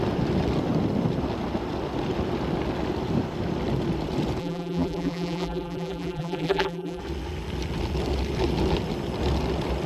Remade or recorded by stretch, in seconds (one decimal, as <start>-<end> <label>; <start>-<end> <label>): 0.0-4.4 recorded; 4.4-7.0 remade; 7.0-9.9 recorded